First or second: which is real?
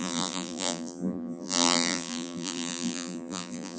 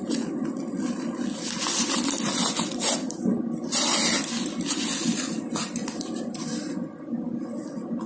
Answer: second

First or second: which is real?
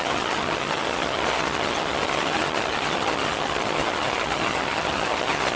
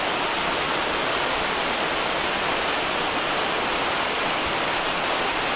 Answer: second